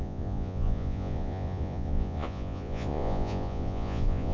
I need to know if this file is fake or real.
fake